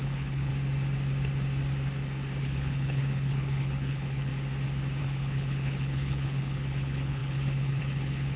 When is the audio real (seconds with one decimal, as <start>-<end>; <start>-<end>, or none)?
0.5-2.4; 4.3-5.0